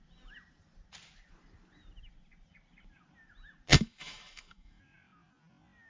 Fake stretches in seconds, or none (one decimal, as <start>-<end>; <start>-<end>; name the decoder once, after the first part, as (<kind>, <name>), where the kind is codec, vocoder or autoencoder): 3.7-4.8 (autoencoder, DAC-VAE)